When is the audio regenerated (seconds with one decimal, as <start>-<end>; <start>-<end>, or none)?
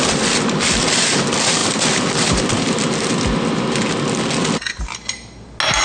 none